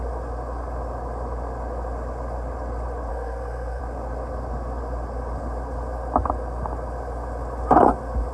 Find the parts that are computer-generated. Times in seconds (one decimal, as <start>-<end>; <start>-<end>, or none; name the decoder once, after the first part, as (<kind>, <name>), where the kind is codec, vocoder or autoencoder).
3.1-3.8 (codec, SNAC)